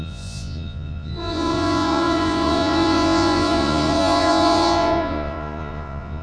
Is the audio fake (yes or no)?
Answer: yes